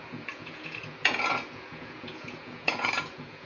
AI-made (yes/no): yes